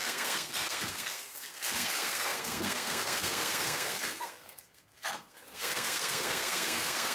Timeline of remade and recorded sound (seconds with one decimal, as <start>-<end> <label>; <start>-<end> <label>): 0.0-7.1 remade